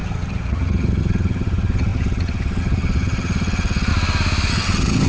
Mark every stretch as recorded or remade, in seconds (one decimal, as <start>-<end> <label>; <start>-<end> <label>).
0.0-3.9 remade; 3.9-4.5 recorded; 4.5-5.1 remade